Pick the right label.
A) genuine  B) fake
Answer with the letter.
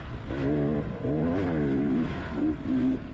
A